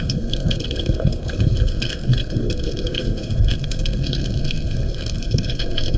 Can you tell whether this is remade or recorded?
remade